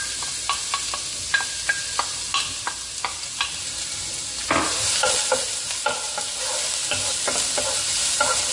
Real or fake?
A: real